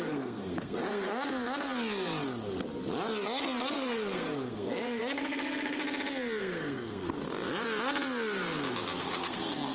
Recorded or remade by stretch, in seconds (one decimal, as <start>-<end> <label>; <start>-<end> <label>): 0.0-1.1 remade; 1.1-3.7 recorded; 3.7-5.8 remade; 5.8-6.4 recorded; 6.4-7.2 remade; 7.2-9.0 recorded; 9.0-9.7 remade